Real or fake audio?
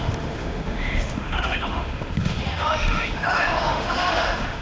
fake